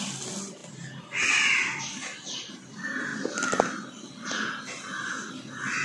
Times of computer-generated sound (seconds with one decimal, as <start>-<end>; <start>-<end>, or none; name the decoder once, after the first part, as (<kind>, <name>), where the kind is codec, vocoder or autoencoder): none